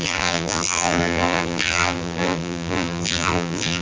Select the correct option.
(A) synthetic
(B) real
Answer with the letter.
A